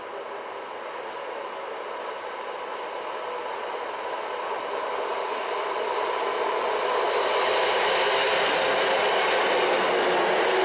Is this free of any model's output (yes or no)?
yes